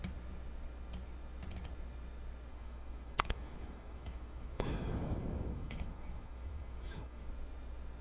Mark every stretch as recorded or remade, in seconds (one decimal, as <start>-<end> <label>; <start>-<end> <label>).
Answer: 0.0-2.5 recorded; 2.5-7.3 remade; 7.3-8.0 recorded